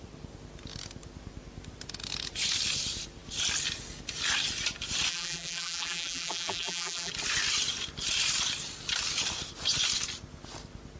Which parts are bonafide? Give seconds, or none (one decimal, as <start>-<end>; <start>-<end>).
0.0-5.1; 7.1-11.0